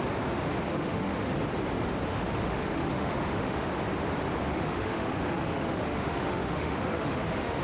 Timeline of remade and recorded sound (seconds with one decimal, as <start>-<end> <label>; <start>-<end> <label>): 0.0-0.7 recorded; 0.7-1.3 remade; 1.3-2.1 recorded; 2.1-3.7 remade; 3.7-4.5 recorded; 4.5-7.6 remade